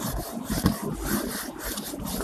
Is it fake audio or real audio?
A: real